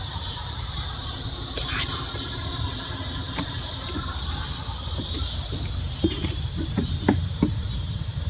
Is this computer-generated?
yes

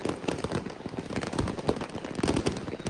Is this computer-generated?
no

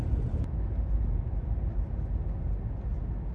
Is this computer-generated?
no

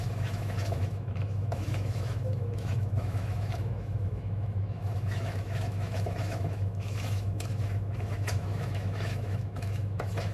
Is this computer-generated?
yes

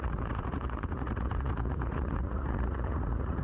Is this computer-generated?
yes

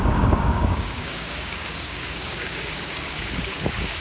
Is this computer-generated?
yes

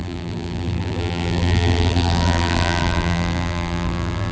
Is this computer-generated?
yes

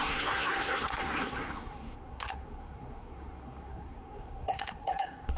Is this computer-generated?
yes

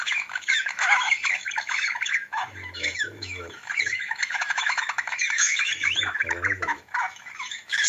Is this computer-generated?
yes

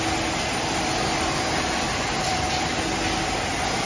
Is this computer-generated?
no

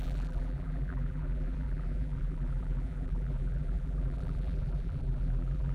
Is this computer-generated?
yes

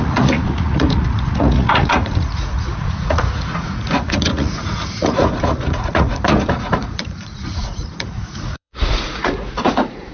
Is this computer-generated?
yes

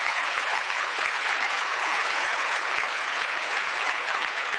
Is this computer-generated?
yes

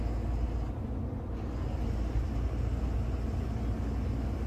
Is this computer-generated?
no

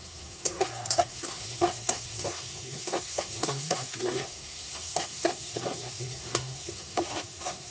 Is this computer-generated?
yes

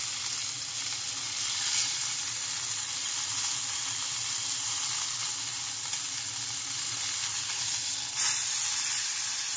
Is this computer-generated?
no